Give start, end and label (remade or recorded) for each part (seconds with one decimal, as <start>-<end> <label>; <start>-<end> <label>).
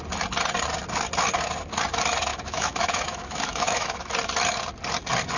0.0-2.3 recorded; 2.3-4.1 remade; 4.1-5.4 recorded